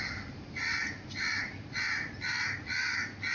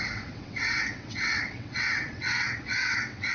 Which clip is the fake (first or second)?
second